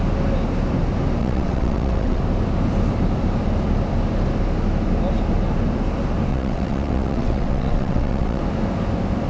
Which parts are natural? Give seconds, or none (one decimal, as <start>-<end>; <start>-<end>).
0.0-1.2; 2.2-6.3; 8.4-9.3